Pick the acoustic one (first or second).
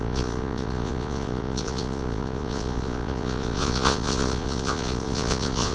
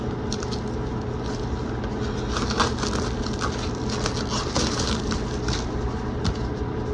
second